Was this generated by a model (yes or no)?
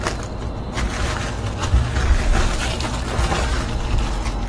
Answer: no